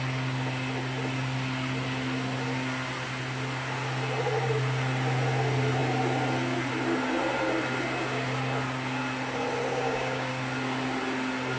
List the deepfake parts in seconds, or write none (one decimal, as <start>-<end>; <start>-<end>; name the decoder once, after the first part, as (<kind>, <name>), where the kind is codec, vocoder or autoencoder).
9.7-10.3 (codec, DAC)

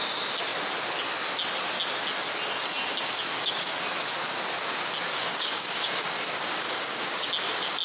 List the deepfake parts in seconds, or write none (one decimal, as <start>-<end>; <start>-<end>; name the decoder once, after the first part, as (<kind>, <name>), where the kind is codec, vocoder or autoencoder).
3.3-3.8 (codec, DAC); 5.1-7.3